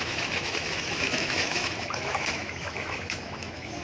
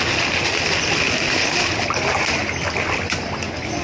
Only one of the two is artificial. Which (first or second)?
first